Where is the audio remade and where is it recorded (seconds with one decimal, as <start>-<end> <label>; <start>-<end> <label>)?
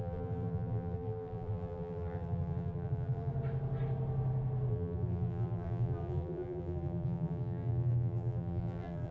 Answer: 0.0-3.3 remade; 3.3-4.7 recorded; 4.7-9.1 remade